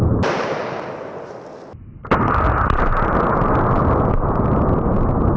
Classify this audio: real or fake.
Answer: real